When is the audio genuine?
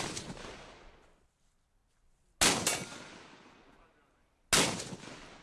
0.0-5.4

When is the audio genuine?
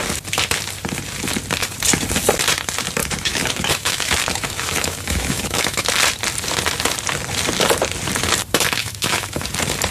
0.0-3.0; 5.8-8.8; 9.4-9.9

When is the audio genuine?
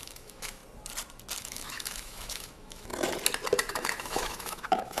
0.6-1.4; 2.9-3.7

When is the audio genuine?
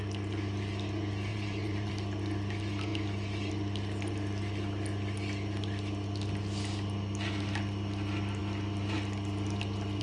0.0-1.3; 1.9-10.0